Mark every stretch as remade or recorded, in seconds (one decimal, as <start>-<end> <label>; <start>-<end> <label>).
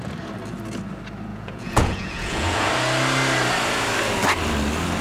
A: 0.0-1.3 recorded; 1.3-2.7 remade; 2.7-5.0 recorded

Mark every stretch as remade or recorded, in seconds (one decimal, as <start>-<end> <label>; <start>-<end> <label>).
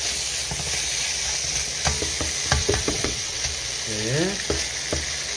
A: 0.0-2.6 recorded; 2.6-3.4 remade; 3.4-5.4 recorded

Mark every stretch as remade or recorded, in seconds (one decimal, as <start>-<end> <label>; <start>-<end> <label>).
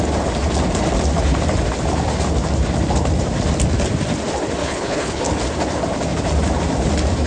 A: 0.0-4.6 recorded; 4.6-5.2 remade; 5.2-7.3 recorded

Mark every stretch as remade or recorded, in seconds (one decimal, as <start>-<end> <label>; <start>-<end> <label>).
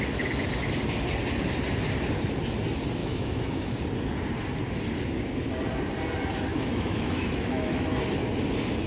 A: 0.0-3.0 recorded; 3.0-3.8 remade; 3.8-6.5 recorded; 6.5-8.0 remade; 8.0-8.9 recorded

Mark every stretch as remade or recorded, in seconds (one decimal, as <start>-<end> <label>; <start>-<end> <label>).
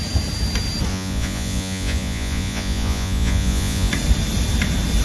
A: 0.0-0.9 recorded; 0.9-3.9 remade; 3.9-5.0 recorded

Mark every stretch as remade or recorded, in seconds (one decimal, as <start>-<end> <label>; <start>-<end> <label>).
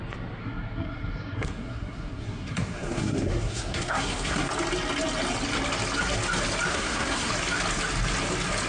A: 0.0-0.4 recorded; 0.4-4.5 remade; 4.5-6.7 recorded; 6.7-7.3 remade; 7.3-8.7 recorded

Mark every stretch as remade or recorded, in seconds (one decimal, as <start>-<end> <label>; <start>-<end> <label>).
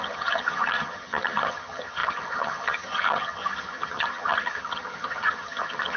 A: 0.0-6.0 remade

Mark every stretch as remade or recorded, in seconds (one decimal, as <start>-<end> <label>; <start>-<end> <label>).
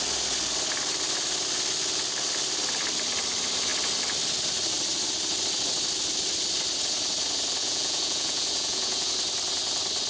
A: 0.0-7.6 recorded; 7.6-9.1 remade; 9.1-10.1 recorded